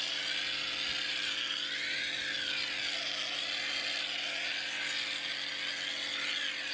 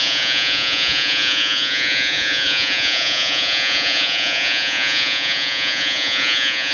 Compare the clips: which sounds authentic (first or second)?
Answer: first